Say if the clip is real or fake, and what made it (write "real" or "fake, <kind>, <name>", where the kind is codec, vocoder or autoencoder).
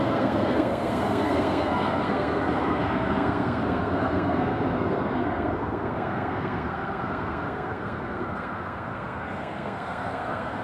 fake, codec, SNAC